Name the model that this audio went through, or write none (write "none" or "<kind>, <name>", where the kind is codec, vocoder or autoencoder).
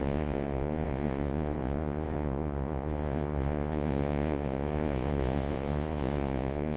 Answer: vocoder, Vocos